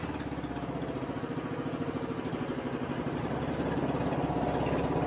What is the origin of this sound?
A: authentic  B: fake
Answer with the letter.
A